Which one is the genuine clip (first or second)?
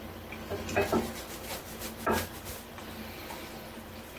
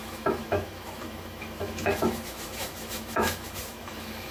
first